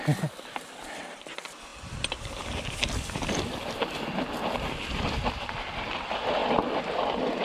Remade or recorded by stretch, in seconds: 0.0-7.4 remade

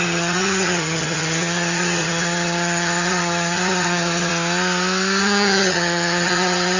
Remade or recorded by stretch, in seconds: 0.0-4.3 remade; 4.3-5.2 recorded; 5.2-6.8 remade

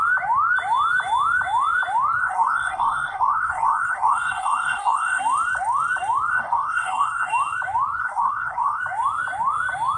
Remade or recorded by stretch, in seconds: 0.0-2.2 recorded; 2.2-5.2 remade; 5.2-6.3 recorded; 6.3-7.3 remade; 7.3-8.0 recorded; 8.0-8.8 remade; 8.8-10.0 recorded